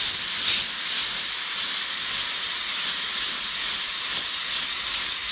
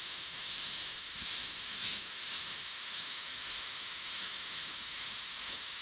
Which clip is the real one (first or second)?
first